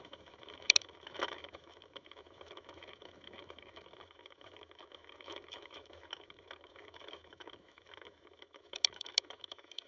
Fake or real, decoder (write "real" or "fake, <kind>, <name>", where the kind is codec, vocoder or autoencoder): fake, autoencoder, DAC-VAE